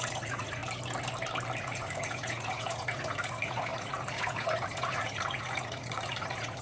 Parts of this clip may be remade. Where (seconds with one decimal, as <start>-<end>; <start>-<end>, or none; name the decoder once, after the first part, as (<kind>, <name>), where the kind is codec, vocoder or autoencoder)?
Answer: 0.0-0.6 (vocoder, Vocos); 1.6-6.6

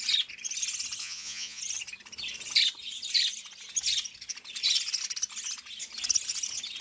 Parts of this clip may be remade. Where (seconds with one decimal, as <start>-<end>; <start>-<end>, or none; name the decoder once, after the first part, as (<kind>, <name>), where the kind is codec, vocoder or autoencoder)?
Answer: 1.0-1.6 (vocoder, Vocos)